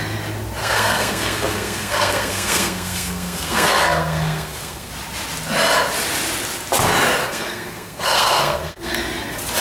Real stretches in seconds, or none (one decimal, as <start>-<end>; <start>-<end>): 0.0-0.6; 4.9-7.2; 8.9-9.6